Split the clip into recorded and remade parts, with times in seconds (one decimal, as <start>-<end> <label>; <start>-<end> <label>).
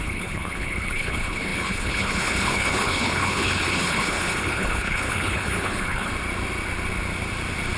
0.0-6.1 remade; 6.1-7.8 recorded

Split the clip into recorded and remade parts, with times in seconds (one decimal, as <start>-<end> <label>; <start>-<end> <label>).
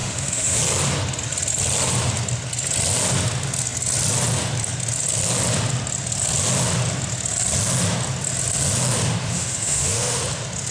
0.0-0.6 remade; 0.6-9.2 recorded; 9.2-10.2 remade; 10.2-10.7 recorded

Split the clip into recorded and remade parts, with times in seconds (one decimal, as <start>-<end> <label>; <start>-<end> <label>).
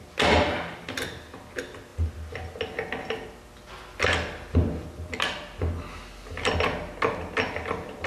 0.0-8.1 recorded